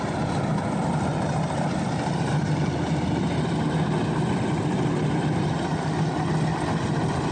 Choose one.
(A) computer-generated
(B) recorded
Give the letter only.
B